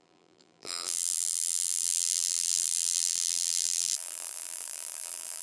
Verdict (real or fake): fake